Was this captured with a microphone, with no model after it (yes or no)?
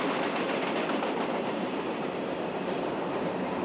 yes